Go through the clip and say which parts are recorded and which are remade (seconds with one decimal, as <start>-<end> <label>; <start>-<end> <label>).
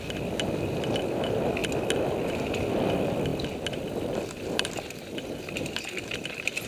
0.0-6.7 recorded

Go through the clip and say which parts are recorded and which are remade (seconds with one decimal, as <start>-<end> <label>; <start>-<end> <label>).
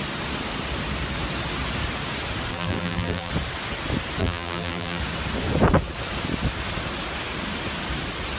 0.0-2.5 recorded; 2.5-3.3 remade; 3.3-4.2 recorded; 4.2-5.0 remade; 5.0-8.4 recorded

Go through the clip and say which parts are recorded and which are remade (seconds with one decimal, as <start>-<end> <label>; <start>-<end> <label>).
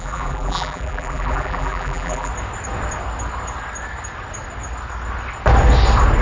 0.0-2.3 remade; 2.3-6.2 recorded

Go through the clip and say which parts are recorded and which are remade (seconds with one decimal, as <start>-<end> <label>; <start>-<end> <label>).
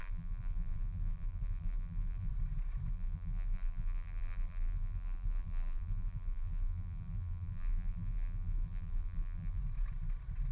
0.0-2.3 remade; 2.3-2.9 recorded; 2.9-9.6 remade; 9.6-10.5 recorded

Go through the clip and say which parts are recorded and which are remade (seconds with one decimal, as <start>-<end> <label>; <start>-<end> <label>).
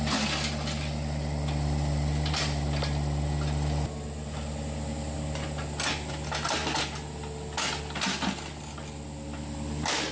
0.0-10.1 recorded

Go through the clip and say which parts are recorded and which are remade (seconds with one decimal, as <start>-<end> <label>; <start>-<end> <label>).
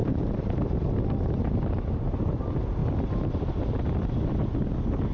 0.0-0.6 remade; 0.6-5.1 recorded